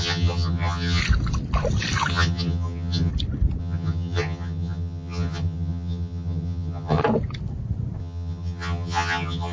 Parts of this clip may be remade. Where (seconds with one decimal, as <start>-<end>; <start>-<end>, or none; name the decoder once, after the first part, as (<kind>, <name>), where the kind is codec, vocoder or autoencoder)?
0.0-1.0 (vocoder, HiFi-GAN); 2.1-3.1; 3.6-7.0; 8.0-9.5